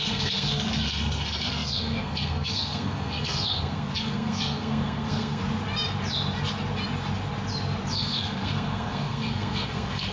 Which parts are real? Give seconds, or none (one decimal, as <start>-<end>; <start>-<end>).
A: 5.4-7.9